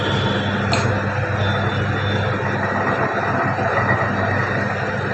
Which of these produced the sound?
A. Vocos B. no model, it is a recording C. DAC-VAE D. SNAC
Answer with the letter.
B